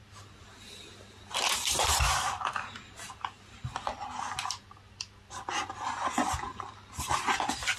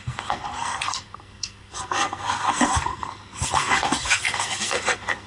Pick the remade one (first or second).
second